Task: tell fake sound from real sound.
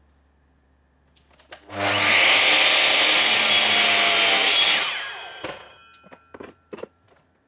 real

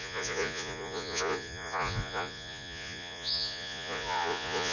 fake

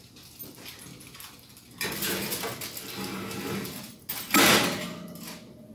real